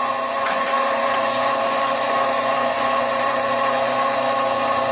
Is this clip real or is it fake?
fake